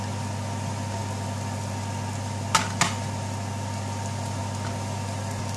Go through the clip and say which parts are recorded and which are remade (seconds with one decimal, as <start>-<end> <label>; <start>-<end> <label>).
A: 0.0-5.6 recorded